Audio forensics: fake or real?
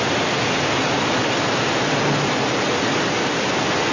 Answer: real